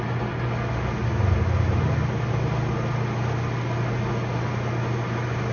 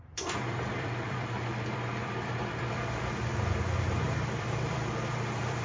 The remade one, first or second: second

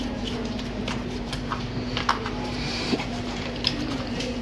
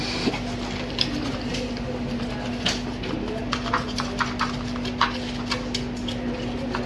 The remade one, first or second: first